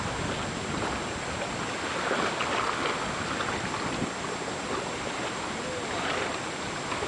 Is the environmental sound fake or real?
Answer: real